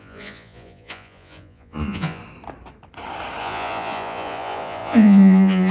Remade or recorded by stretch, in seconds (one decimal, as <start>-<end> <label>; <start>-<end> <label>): 0.0-2.2 remade; 2.2-3.4 recorded; 3.4-5.7 remade

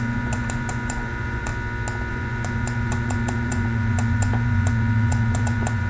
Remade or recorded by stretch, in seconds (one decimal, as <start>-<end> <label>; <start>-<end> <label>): 0.0-1.5 remade; 1.5-2.1 recorded; 2.1-5.9 remade

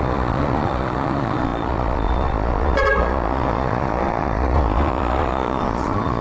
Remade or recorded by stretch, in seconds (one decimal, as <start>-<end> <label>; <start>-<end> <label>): 0.0-6.2 remade

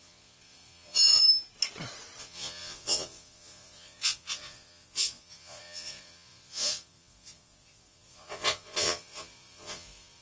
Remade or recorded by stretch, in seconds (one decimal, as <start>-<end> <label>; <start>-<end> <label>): 0.0-1.2 remade; 1.2-2.2 recorded; 2.2-10.2 remade